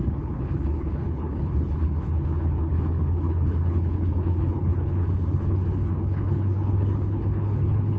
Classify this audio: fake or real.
fake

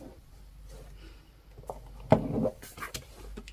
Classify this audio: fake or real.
real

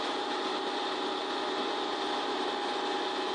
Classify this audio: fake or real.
real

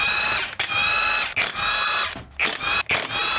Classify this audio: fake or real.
real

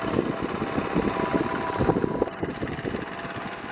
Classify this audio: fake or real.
real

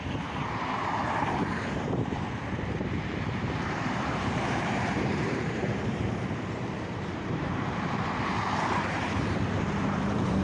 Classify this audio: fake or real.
fake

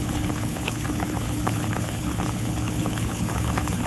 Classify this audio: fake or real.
fake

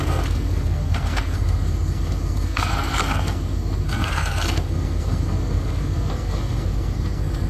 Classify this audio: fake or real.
fake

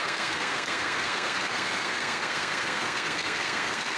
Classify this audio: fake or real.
fake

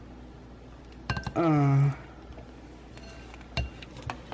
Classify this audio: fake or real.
real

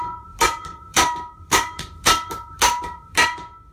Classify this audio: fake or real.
fake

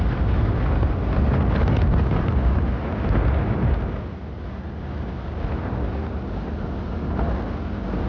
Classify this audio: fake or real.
real